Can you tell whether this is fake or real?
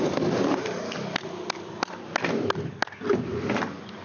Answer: real